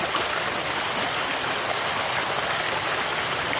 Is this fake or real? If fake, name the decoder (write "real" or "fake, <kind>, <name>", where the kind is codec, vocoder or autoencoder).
real